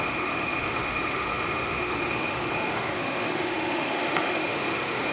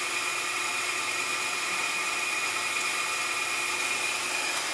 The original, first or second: second